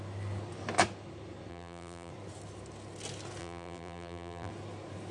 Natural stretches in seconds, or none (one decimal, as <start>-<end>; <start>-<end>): 0.0-1.5; 2.1-3.4; 4.5-5.1